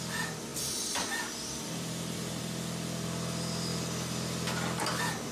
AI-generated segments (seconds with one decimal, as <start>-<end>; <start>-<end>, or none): 0.5-2.4